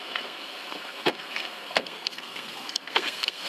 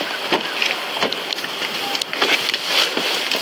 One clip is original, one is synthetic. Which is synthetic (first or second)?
first